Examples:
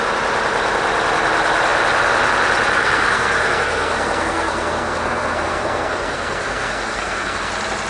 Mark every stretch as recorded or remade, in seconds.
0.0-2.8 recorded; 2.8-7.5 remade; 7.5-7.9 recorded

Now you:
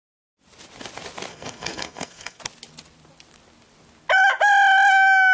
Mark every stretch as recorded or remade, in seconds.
0.0-1.3 recorded; 1.3-2.4 remade; 2.4-5.3 recorded

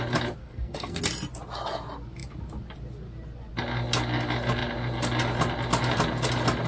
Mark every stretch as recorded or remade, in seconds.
0.0-0.4 recorded; 0.4-1.0 remade; 1.0-6.7 recorded

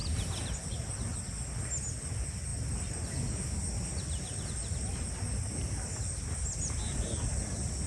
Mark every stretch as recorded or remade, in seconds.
0.0-7.9 recorded

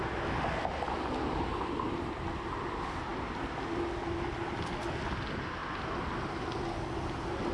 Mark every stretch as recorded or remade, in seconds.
0.0-7.5 recorded

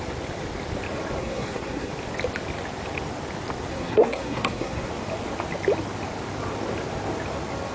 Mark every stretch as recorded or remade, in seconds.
0.0-1.2 recorded; 1.2-1.9 remade; 1.9-3.7 recorded; 3.7-4.9 remade; 4.9-7.7 recorded

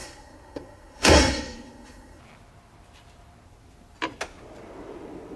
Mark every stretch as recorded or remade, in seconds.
0.0-2.2 remade; 2.2-5.4 recorded

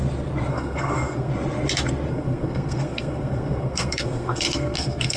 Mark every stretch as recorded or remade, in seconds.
0.0-0.5 recorded; 0.5-1.3 remade; 1.3-2.1 recorded; 2.1-5.2 remade